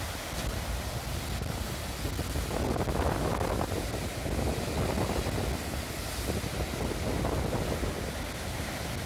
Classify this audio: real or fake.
real